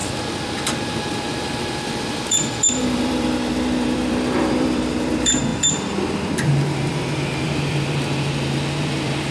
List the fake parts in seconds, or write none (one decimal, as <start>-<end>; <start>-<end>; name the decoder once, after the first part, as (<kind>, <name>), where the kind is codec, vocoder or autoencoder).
0.0-9.3 (vocoder, BigVGAN v2)